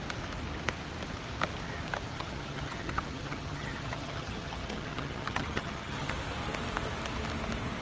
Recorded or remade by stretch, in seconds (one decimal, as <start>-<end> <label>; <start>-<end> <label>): 0.0-2.1 recorded; 2.1-6.1 remade; 6.1-7.8 recorded